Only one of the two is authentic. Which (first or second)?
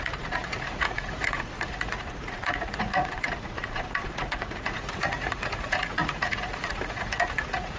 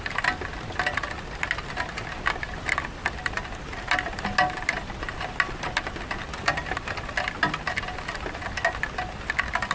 second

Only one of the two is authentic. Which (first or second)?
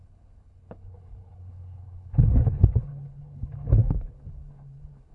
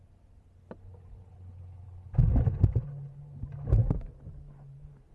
second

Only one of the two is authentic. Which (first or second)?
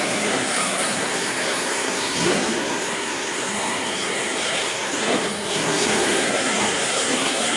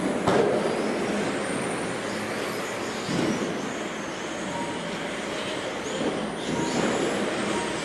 second